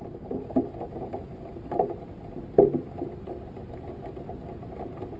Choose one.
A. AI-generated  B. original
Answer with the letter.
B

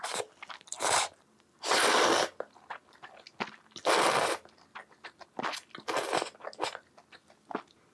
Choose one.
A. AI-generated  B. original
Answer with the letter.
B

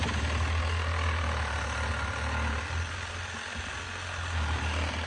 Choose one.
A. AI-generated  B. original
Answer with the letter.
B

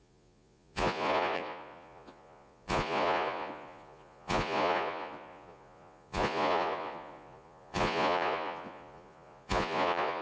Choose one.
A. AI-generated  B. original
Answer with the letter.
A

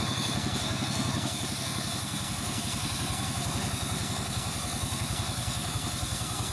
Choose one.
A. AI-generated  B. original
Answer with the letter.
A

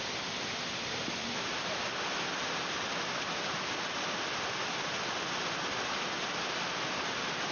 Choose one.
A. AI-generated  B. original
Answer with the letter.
B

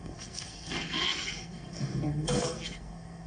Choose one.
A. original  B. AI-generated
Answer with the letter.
B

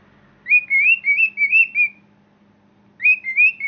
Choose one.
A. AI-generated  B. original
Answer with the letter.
B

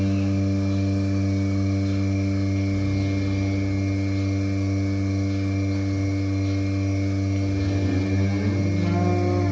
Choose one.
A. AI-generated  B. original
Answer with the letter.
B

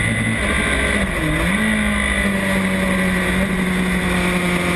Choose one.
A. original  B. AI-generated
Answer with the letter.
A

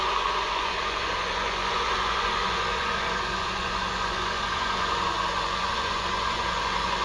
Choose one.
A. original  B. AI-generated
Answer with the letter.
B